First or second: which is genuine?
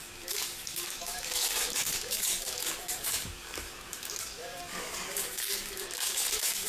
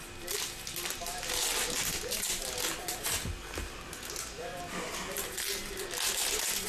second